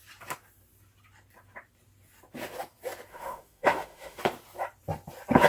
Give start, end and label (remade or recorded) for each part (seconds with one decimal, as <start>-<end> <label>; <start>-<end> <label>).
0.0-3.1 recorded; 3.1-4.2 remade; 4.2-5.5 recorded